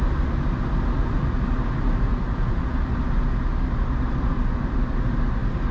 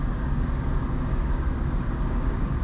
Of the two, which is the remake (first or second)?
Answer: second